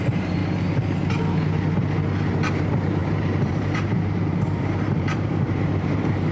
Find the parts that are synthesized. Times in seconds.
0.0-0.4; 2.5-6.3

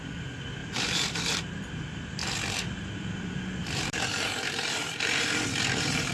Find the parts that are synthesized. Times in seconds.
0.6-1.4; 3.6-5.2

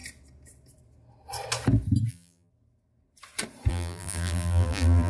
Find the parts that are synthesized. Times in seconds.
2.1-2.5; 3.7-5.1

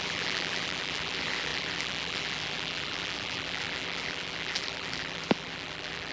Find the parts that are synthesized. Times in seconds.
0.0-6.1